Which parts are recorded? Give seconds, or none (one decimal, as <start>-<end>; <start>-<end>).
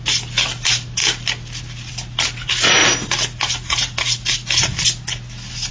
0.0-5.7